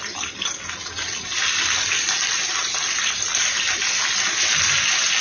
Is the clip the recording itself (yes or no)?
yes